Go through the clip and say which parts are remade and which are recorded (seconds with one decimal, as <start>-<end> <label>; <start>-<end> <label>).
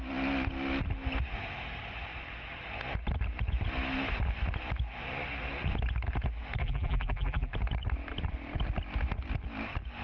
0.0-6.6 recorded; 6.6-7.5 remade; 7.5-10.0 recorded